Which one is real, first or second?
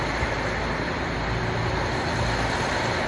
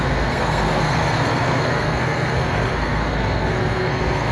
first